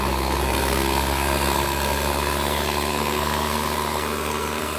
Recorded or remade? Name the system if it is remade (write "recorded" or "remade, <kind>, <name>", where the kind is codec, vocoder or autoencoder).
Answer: remade, codec, SNAC